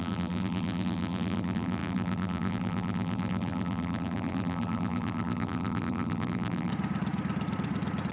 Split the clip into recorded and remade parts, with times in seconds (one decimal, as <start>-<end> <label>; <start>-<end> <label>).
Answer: 0.0-6.7 remade; 6.7-8.1 recorded